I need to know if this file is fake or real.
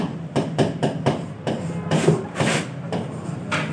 real